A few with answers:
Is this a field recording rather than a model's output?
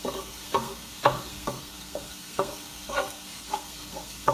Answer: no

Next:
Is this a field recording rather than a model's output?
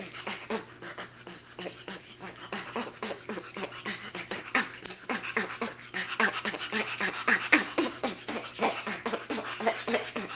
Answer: yes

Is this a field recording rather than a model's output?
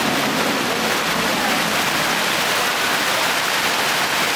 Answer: yes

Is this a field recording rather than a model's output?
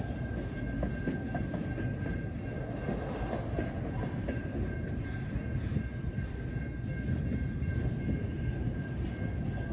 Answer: yes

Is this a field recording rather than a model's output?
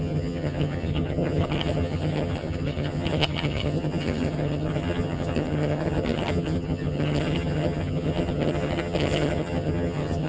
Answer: no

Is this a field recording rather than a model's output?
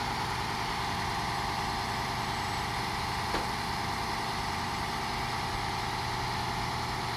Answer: yes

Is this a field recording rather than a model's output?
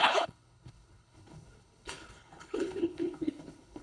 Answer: no